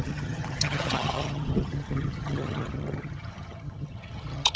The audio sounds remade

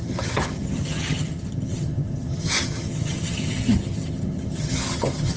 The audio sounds remade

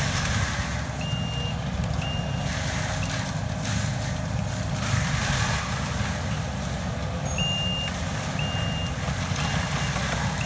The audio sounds recorded